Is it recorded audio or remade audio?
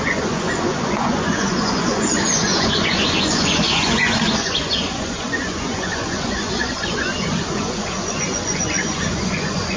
remade